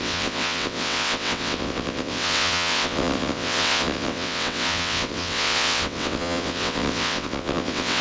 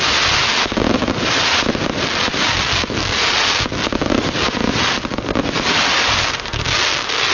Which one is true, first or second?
second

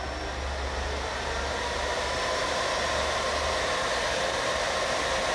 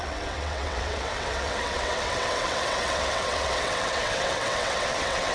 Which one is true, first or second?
first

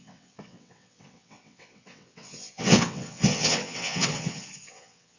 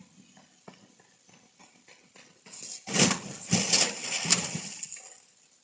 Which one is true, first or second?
second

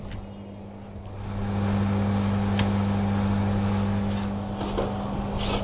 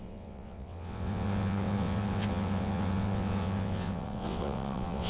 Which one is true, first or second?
first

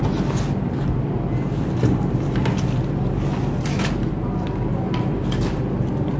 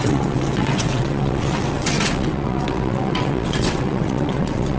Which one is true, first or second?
first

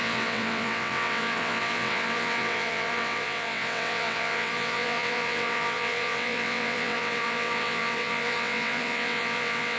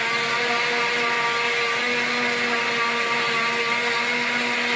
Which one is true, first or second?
second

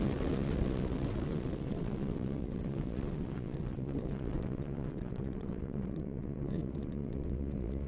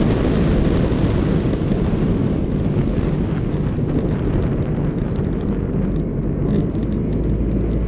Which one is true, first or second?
second